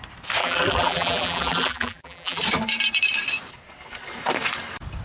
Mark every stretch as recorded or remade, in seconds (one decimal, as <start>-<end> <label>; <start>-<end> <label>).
0.0-0.4 recorded; 0.4-2.4 remade; 2.4-5.0 recorded